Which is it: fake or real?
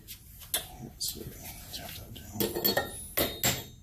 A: real